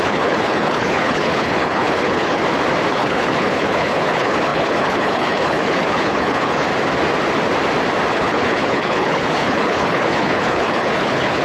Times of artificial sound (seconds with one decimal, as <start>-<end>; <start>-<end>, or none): 0.0-2.4; 2.9-6.7; 8.1-11.4